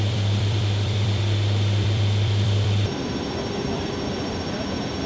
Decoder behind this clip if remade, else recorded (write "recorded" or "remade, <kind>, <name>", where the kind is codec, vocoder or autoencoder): remade, vocoder, BigVGAN v2